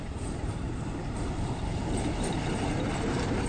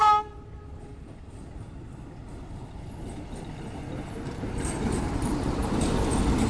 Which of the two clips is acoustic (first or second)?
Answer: second